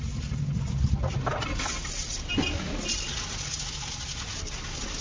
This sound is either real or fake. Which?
real